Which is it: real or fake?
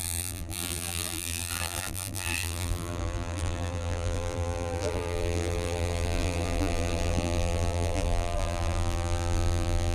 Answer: fake